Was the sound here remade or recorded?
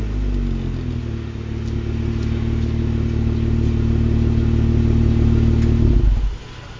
recorded